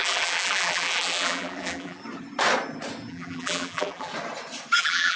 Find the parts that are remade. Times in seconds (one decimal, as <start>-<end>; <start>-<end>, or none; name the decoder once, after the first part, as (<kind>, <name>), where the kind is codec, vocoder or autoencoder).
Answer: 0.0-2.0 (vocoder, BigVGAN v2); 3.1-4.1; 4.8-5.2